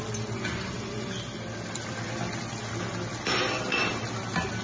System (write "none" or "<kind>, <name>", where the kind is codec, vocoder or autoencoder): none